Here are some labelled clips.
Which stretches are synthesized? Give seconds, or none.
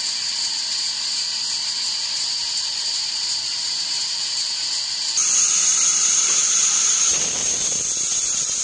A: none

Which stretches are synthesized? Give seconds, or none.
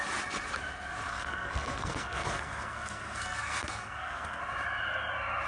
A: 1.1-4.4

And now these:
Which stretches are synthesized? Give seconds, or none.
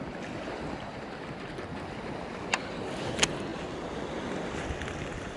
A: none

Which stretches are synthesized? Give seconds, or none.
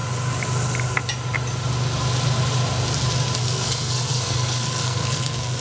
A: 3.4-5.6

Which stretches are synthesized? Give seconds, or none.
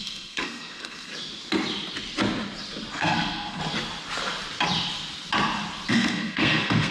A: 0.0-1.1; 2.9-3.6; 5.9-6.9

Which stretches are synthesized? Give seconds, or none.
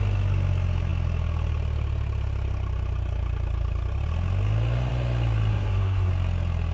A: 5.5-6.1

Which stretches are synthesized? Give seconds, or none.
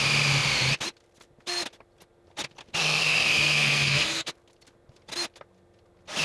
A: 2.8-4.3